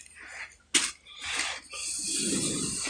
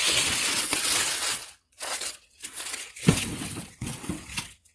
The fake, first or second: second